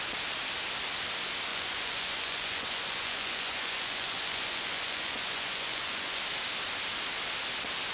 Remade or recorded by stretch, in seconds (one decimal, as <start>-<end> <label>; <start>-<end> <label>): 0.0-1.5 recorded; 1.5-6.2 remade; 6.2-7.9 recorded